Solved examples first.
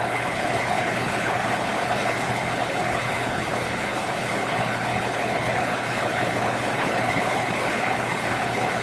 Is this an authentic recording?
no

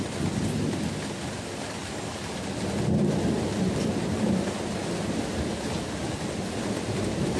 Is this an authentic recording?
yes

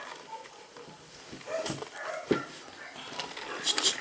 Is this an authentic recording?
yes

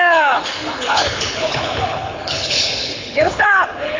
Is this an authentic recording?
no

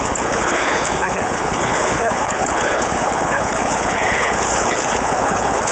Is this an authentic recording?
no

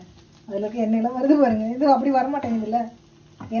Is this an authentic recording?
yes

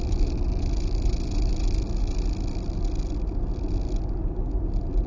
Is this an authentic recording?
yes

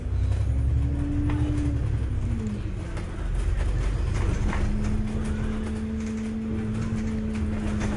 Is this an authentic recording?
yes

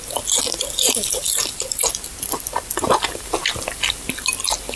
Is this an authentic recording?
yes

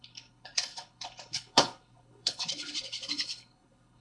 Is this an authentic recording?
no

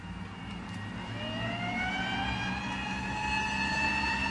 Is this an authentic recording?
yes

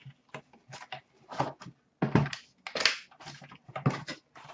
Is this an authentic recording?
yes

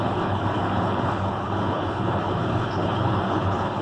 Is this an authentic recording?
no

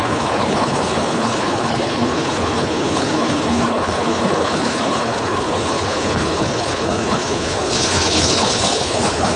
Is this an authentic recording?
no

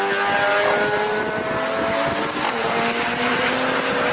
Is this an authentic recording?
yes